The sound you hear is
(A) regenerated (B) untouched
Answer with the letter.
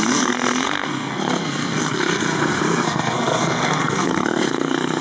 A